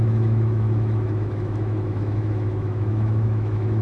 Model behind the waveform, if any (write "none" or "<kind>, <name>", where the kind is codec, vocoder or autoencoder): autoencoder, DAC-VAE